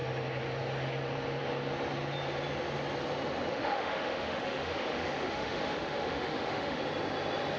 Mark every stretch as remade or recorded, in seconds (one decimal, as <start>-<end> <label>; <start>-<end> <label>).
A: 0.0-3.5 recorded; 3.5-6.8 remade; 6.8-7.6 recorded